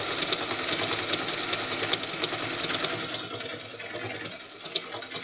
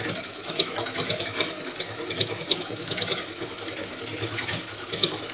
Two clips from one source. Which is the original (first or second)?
first